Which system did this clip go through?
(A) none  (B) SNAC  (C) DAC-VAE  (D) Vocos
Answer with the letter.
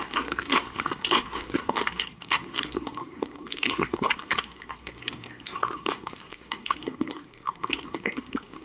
B